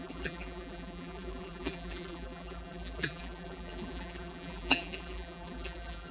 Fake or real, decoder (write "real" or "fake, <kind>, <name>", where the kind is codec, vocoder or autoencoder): fake, vocoder, BigVGAN v2